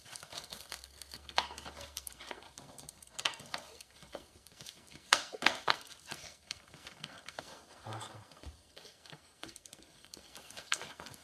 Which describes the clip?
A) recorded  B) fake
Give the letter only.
B